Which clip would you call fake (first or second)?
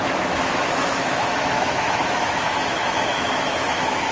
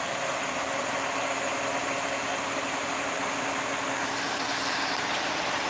first